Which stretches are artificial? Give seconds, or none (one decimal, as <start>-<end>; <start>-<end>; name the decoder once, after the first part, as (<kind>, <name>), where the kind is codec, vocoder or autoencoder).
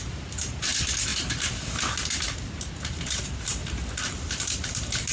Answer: 0.0-1.1 (vocoder, BigVGAN v2); 3.0-3.6; 4.4-5.1